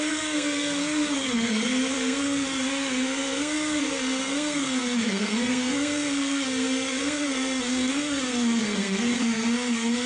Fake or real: fake